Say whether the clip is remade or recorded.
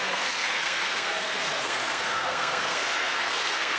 remade